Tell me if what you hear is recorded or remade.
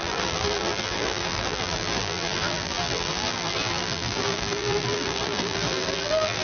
remade